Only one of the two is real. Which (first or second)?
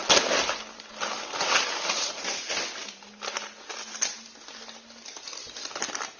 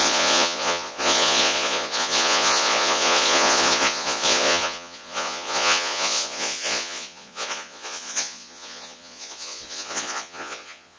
first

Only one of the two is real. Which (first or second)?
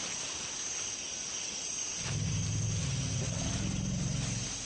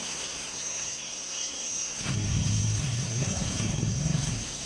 first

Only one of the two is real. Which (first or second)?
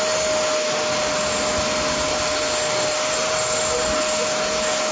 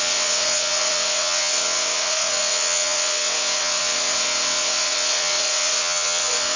first